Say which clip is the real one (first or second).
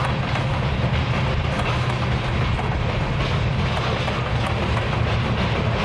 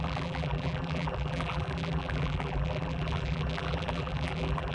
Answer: first